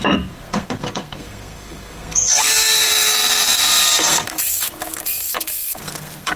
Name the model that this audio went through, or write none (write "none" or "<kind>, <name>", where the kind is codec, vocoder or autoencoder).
codec, SNAC